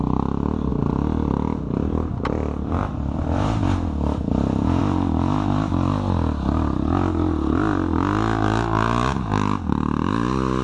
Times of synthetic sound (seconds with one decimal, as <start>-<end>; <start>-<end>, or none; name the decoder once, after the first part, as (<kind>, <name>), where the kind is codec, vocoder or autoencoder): none